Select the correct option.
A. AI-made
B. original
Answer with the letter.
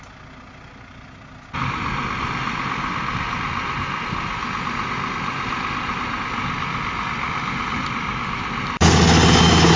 B